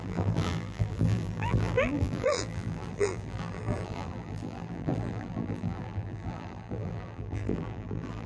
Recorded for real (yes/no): no